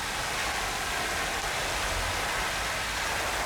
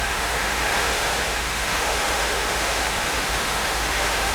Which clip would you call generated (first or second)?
second